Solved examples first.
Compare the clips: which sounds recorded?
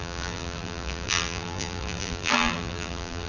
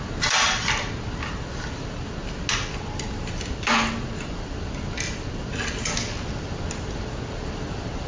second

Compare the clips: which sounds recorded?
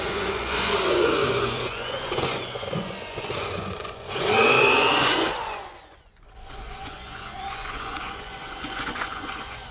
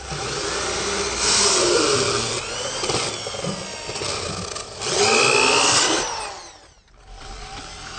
second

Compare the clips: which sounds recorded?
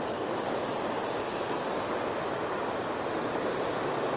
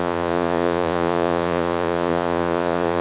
first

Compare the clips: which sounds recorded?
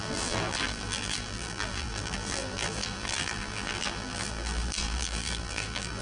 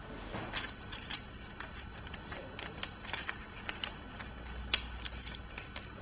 second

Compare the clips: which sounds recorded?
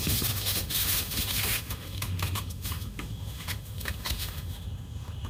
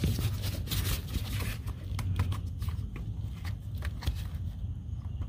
second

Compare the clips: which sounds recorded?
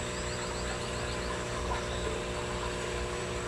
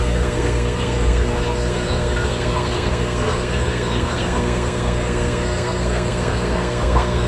first